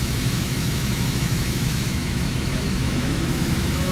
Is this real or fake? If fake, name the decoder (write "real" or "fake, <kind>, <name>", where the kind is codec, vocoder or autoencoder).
fake, autoencoder, DAC-VAE